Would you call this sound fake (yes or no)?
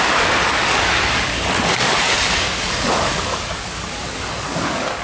yes